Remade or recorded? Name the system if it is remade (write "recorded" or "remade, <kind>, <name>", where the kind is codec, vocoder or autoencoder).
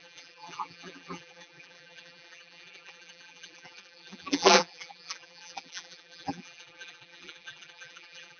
remade, vocoder, BigVGAN v2